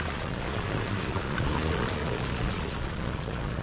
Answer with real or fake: fake